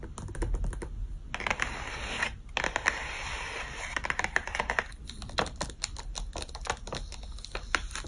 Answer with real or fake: real